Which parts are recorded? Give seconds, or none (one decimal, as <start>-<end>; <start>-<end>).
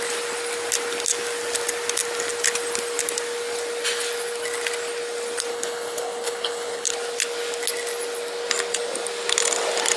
0.0-5.5; 6.9-10.0